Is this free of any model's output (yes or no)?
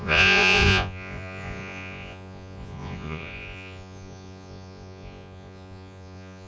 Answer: no